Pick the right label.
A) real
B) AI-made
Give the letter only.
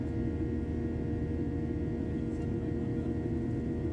A